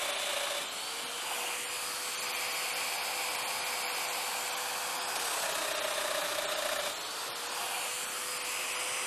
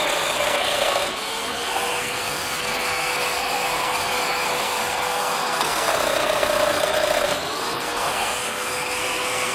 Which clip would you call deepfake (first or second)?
second